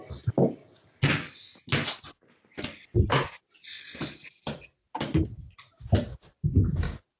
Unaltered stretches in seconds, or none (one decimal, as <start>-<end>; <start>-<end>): 0.0-7.2

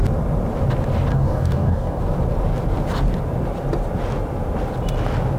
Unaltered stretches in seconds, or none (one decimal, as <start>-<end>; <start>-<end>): 0.0-1.1; 2.0-5.4

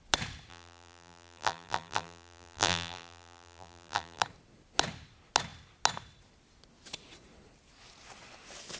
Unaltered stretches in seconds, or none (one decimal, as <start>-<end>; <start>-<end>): 0.0-0.5; 4.2-8.8

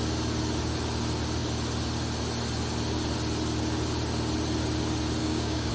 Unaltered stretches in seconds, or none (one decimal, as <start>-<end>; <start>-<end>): 0.0-5.2

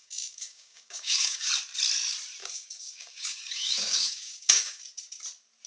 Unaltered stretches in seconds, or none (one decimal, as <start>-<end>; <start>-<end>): 1.5-2.4; 4.8-5.7

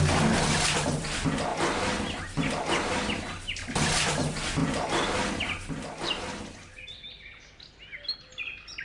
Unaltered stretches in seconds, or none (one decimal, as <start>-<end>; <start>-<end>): 0.0-8.8